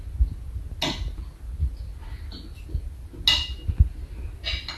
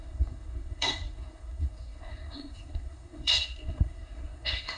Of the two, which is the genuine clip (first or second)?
first